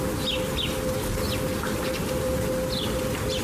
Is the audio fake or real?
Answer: real